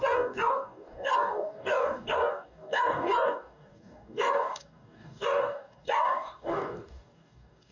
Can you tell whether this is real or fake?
fake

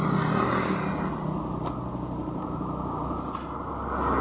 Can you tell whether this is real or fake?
real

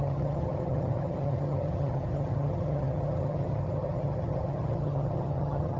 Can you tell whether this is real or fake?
fake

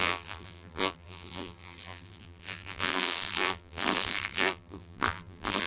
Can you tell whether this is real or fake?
fake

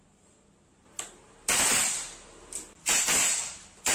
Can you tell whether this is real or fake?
real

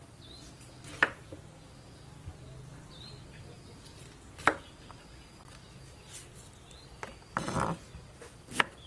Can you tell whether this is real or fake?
real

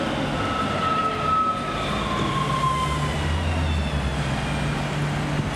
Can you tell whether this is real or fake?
real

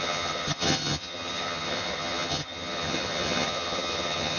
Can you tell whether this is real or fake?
fake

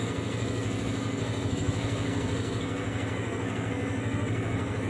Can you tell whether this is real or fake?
fake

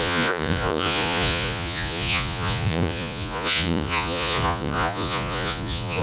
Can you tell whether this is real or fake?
fake